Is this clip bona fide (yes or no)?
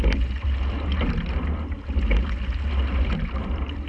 yes